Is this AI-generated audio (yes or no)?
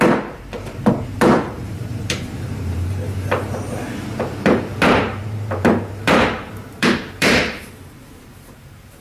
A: yes